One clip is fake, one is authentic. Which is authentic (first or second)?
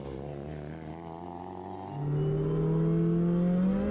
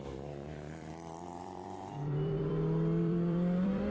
first